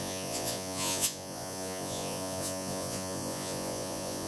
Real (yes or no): no